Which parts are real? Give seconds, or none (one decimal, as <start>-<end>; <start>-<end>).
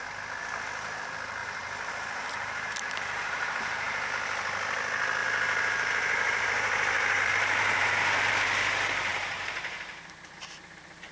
0.0-1.4; 4.1-5.2; 8.3-9.1; 10.0-11.1